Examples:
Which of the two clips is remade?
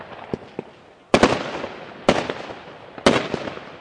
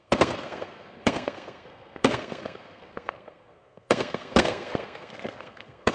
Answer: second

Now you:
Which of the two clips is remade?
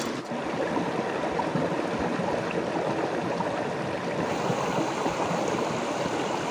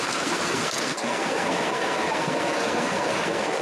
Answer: second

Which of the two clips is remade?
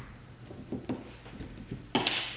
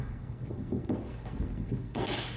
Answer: second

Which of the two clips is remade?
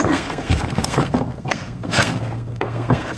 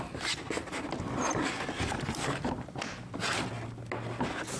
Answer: first